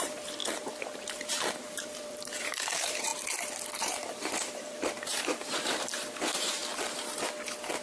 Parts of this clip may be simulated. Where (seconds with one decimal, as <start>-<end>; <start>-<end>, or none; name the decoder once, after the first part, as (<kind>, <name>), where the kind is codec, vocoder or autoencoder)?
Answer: 0.0-3.1 (vocoder, BigVGAN v2); 3.8-6.6